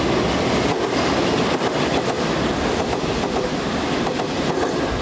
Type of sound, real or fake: real